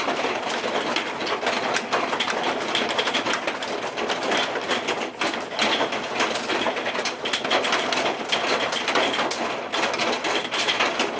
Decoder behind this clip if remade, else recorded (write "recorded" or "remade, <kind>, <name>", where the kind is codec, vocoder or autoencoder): recorded